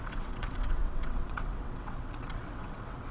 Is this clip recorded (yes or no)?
no